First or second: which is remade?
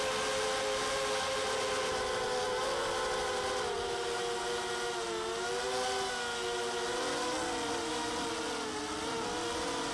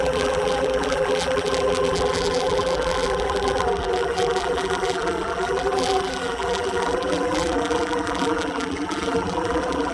second